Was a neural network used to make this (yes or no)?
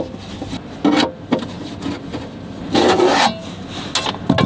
no